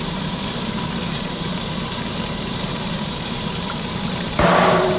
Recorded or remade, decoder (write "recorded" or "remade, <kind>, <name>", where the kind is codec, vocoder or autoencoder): remade, vocoder, BigVGAN v2